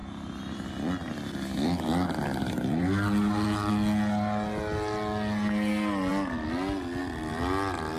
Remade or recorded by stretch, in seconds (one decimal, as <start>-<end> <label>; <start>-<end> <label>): 0.0-3.7 remade; 3.7-8.0 recorded